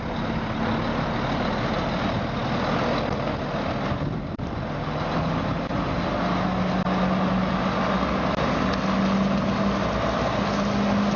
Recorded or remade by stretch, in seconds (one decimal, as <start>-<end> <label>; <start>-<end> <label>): 0.0-11.2 recorded